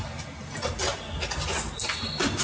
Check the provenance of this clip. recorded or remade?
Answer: recorded